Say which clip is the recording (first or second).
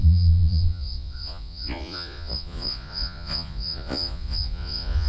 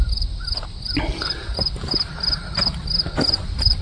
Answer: second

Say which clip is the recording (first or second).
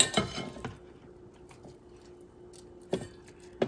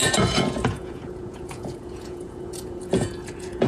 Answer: first